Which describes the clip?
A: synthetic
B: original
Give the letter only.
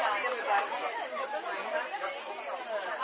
B